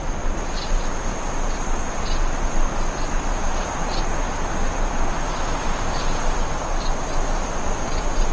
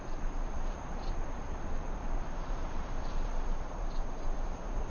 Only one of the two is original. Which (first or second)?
first